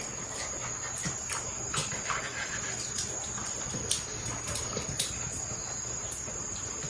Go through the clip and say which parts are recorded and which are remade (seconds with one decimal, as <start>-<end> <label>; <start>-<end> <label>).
0.0-3.4 recorded; 3.4-3.9 remade; 3.9-6.9 recorded